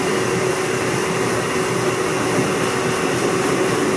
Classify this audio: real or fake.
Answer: real